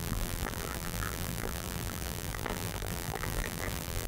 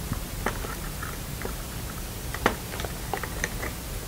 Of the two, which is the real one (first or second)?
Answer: second